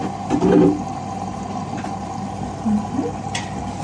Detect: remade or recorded recorded